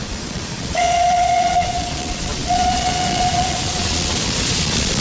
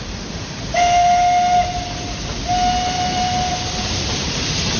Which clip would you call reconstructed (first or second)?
first